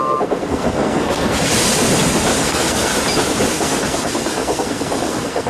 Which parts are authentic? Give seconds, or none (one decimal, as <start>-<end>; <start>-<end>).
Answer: 1.5-2.4; 2.9-3.5